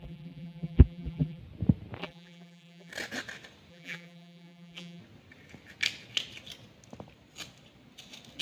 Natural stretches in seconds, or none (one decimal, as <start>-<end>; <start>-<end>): 1.4-2.0; 2.9-3.7; 5.0-8.4